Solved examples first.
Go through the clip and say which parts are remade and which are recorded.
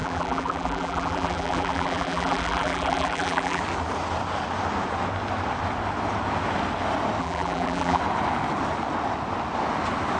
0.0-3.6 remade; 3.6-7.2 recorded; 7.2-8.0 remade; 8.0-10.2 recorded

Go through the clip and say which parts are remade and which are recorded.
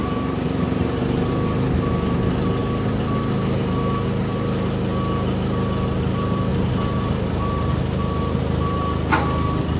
0.0-1.3 remade; 1.3-6.5 recorded; 6.5-7.7 remade; 7.7-9.8 recorded